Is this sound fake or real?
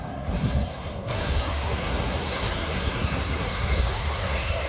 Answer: fake